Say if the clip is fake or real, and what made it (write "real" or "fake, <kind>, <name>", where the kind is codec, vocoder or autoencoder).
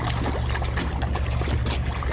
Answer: real